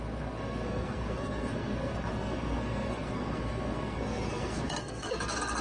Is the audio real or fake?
fake